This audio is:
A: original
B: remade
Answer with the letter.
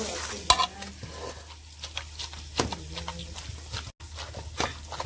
A